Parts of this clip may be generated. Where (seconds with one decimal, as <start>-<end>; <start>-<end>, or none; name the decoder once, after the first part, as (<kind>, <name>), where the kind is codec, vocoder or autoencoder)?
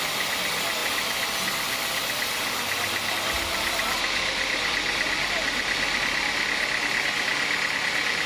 none